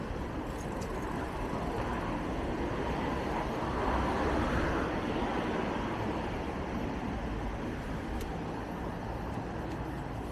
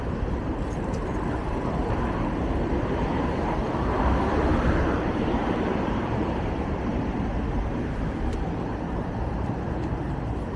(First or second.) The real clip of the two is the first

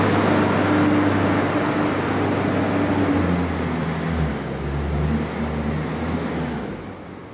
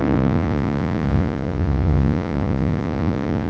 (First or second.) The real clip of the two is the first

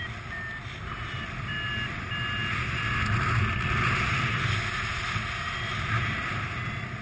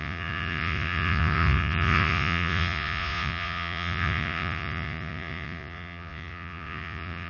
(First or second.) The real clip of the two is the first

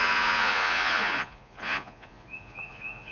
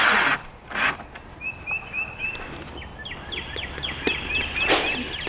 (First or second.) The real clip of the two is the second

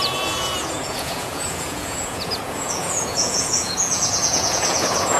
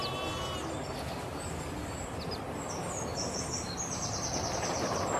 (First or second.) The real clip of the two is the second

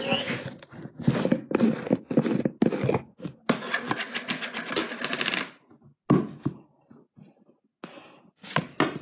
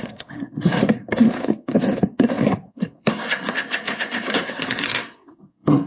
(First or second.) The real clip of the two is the first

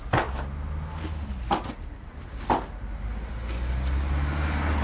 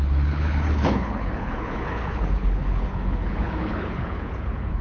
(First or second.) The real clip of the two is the first